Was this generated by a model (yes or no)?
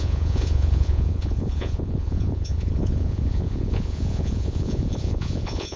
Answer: yes